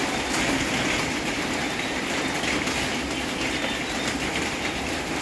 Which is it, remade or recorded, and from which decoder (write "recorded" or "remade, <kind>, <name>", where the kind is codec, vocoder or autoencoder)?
recorded